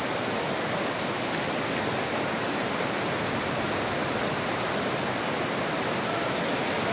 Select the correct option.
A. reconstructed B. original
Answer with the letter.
B